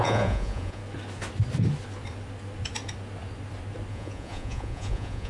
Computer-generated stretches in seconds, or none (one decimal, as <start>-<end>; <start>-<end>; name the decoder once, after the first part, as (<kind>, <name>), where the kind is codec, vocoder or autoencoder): 0.0-0.8 (vocoder, Vocos); 3.9-5.3